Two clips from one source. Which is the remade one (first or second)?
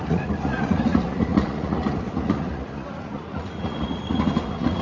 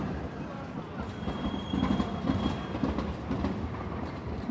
first